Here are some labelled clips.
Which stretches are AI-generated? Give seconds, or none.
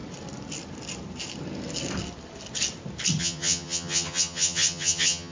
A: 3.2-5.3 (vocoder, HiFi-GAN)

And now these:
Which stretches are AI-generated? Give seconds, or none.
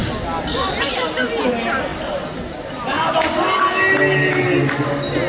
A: none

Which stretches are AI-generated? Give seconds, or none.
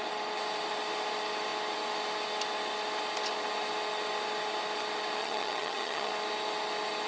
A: 5.2-6.1 (vocoder, HiFi-GAN)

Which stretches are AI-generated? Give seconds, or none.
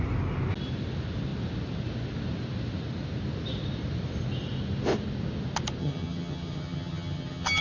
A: 5.8-7.6 (vocoder, HiFi-GAN)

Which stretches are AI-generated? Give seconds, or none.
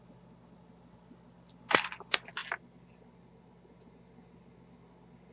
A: none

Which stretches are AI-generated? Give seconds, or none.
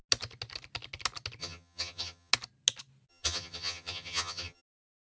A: 1.4-2.3 (vocoder, HiFi-GAN); 3.1-4.6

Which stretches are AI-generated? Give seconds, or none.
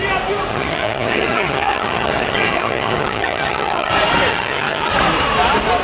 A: 0.5-3.9 (vocoder, HiFi-GAN); 4.3-4.9